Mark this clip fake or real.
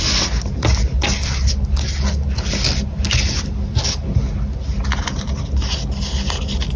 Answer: real